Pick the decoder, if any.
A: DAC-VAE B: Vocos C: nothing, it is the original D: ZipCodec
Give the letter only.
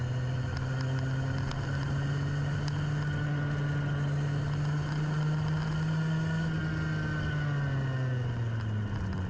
C